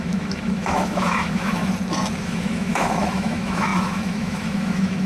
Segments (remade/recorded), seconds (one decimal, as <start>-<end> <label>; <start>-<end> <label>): 0.0-1.6 remade; 1.6-2.2 recorded; 2.2-5.1 remade